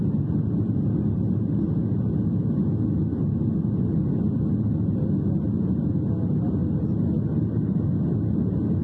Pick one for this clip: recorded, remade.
recorded